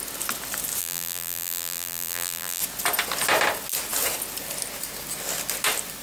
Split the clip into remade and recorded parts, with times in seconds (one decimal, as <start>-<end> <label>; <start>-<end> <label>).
0.0-0.8 recorded; 0.8-2.6 remade; 2.6-6.0 recorded